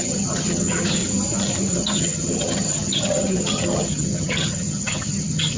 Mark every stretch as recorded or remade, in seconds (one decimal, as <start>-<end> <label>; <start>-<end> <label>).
0.0-1.0 remade; 1.0-1.7 recorded; 1.7-5.6 remade